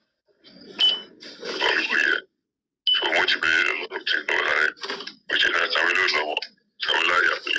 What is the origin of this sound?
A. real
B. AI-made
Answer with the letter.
A